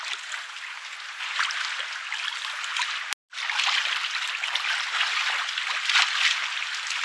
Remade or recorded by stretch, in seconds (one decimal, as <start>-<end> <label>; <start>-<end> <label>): 0.0-7.0 recorded